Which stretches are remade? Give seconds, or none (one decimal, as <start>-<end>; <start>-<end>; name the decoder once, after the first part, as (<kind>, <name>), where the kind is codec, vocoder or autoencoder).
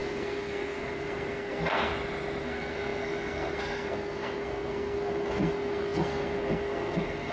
0.0-1.9 (codec, SNAC); 2.4-7.3